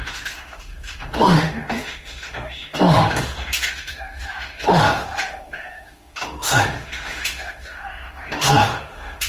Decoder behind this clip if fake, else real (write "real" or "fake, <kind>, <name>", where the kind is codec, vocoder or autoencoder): fake, autoencoder, DAC-VAE